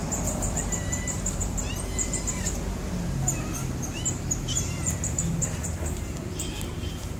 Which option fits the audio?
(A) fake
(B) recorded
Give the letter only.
A